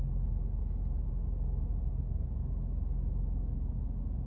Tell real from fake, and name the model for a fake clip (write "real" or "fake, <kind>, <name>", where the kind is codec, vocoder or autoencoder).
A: real